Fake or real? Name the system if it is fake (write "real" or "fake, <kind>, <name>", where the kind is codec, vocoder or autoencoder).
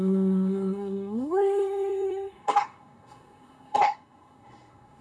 fake, codec, SNAC